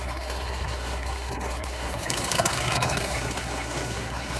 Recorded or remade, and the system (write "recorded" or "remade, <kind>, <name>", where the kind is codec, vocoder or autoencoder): remade, codec, SNAC